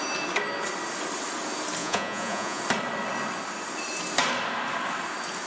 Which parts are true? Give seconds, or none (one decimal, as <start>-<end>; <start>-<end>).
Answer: 0.0-1.8; 2.6-5.5

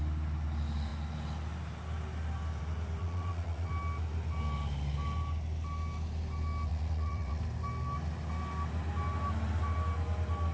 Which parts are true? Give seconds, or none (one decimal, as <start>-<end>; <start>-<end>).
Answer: 0.0-3.0; 3.7-6.7; 7.4-10.5

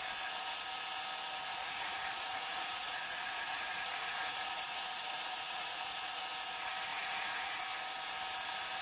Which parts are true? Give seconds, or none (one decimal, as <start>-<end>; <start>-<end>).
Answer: 0.0-1.5; 6.2-6.9; 7.6-8.8

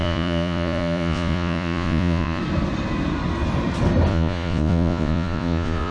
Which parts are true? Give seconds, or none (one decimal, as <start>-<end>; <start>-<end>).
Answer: 2.4-4.1

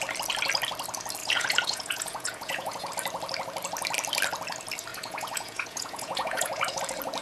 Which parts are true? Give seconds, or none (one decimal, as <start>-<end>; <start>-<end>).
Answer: 0.0-1.2; 2.9-4.9; 6.8-7.2